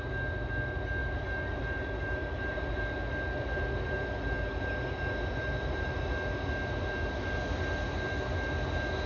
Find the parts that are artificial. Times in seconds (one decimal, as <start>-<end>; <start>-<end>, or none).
1.0-2.8; 5.4-6.0